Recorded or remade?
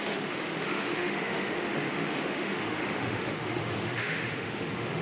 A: remade